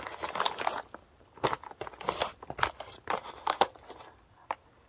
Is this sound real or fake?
real